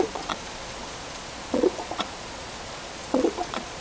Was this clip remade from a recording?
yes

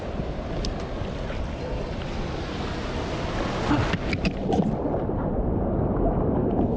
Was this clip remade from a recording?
no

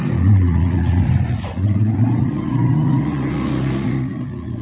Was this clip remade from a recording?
yes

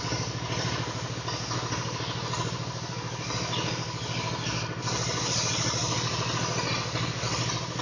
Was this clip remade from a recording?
no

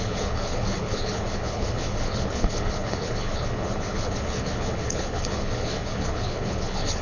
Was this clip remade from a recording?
yes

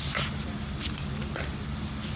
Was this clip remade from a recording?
no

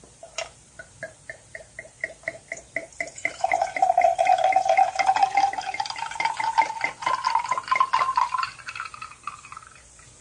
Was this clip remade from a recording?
yes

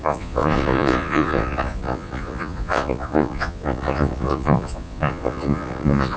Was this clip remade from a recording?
yes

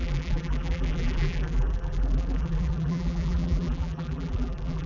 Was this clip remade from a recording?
yes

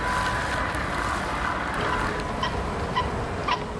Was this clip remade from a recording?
no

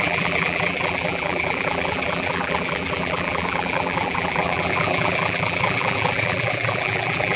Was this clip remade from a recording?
yes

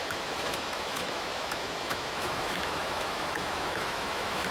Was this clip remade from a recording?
yes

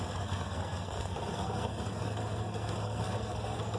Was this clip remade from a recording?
yes